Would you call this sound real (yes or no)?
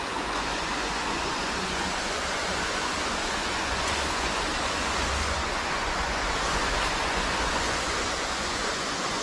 no